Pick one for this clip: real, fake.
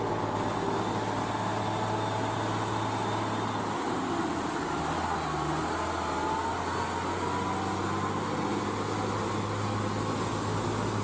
real